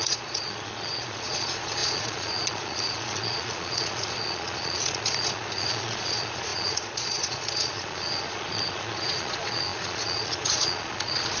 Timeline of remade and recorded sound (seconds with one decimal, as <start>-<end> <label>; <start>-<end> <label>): 0.0-11.4 remade